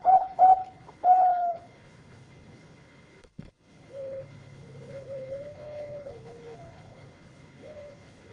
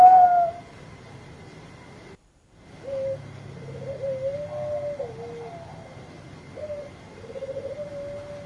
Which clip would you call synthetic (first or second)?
first